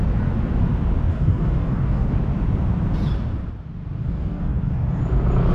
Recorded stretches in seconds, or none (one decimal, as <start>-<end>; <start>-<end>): 0.0-1.1; 2.1-4.0; 5.0-5.5